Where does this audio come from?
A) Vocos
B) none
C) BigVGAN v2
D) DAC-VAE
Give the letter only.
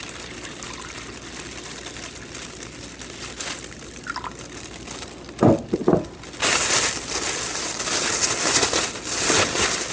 B